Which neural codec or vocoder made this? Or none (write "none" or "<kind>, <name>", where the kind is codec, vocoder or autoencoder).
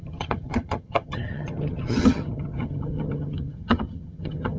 vocoder, HiFi-GAN